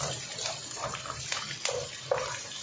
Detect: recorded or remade recorded